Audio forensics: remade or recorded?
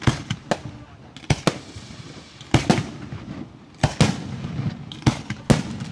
recorded